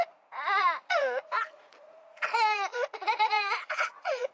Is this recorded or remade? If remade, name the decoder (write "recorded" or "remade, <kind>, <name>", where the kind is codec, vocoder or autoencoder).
remade, vocoder, Vocos